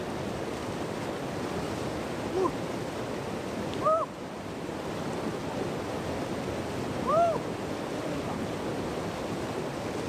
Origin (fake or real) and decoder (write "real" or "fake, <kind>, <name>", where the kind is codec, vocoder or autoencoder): real